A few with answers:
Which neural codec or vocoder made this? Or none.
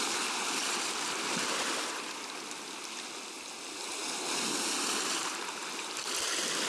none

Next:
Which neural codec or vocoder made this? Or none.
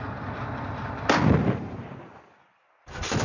vocoder, BigVGAN v2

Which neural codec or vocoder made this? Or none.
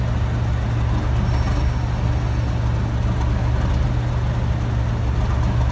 none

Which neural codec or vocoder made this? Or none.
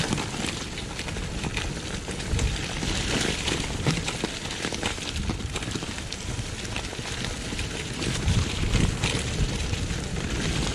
none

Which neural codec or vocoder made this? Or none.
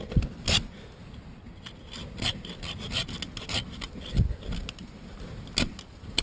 none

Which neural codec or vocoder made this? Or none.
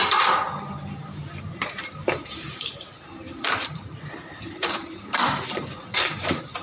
vocoder, BigVGAN v2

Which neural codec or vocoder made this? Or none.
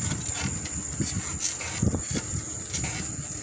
none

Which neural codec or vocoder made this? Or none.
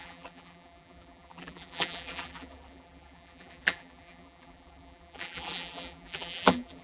vocoder, BigVGAN v2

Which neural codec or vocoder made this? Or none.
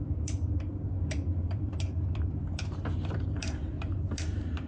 vocoder, BigVGAN v2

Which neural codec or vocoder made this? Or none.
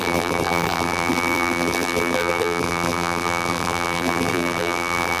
vocoder, BigVGAN v2